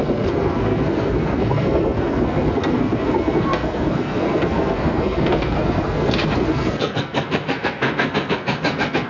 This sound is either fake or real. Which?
fake